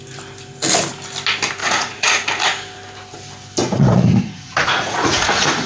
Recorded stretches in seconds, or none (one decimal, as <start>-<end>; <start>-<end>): 0.0-1.6; 2.3-3.6